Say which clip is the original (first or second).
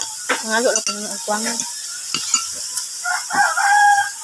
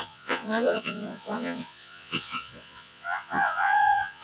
first